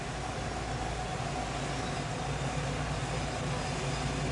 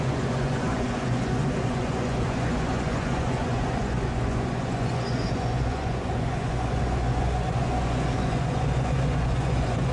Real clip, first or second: first